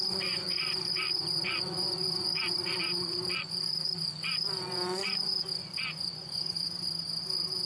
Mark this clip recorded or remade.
remade